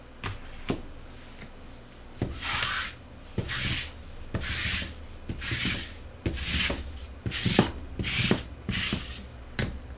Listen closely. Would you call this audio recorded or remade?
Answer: recorded